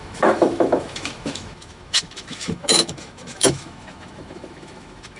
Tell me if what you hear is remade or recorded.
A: remade